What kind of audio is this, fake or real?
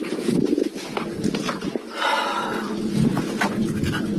real